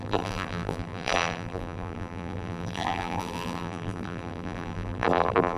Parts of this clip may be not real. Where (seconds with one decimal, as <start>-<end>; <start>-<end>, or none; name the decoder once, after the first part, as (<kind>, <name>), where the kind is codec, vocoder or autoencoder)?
0.0-5.6 (vocoder, BigVGAN v2)